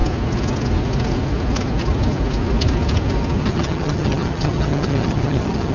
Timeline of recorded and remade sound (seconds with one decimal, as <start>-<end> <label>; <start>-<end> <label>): 0.0-3.4 recorded; 3.4-5.7 remade